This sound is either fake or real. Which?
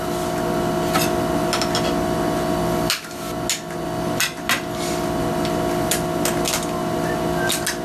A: real